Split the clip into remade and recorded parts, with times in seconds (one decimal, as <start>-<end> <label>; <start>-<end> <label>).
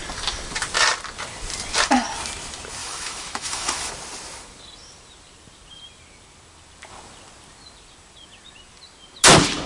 0.0-2.8 recorded; 2.8-3.9 remade; 3.9-9.7 recorded